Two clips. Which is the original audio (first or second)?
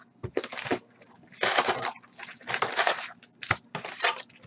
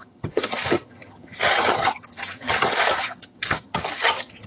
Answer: first